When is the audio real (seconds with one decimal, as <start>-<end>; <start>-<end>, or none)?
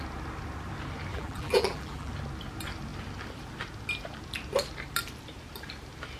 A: 0.0-1.1; 2.1-6.2